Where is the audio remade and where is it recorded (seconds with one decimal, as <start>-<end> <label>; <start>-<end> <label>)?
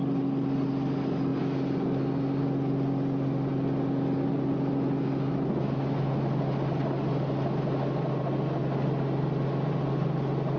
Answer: 0.0-10.6 recorded